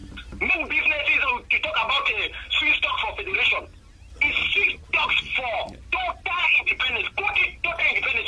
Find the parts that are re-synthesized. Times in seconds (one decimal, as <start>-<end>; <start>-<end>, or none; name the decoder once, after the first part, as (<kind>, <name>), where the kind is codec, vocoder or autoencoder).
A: none